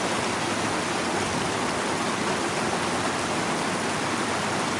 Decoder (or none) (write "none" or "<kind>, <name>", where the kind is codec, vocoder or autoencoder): none